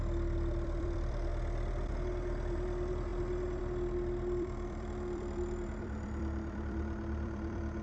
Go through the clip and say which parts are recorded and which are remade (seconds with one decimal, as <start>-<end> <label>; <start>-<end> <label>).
0.0-1.3 remade; 1.3-1.9 recorded; 1.9-7.8 remade